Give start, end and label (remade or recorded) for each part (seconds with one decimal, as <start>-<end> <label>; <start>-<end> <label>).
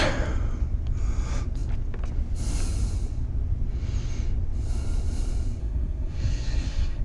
0.0-5.6 recorded; 5.6-7.0 remade